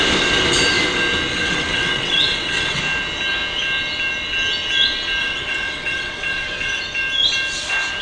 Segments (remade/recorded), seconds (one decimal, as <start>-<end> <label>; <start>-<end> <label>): 0.0-1.3 recorded; 1.3-2.8 remade; 2.8-5.2 recorded; 5.2-6.8 remade; 6.8-8.0 recorded